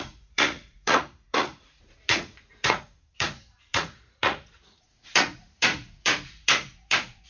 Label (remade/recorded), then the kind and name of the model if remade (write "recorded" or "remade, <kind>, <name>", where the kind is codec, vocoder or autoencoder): remade, vocoder, Vocos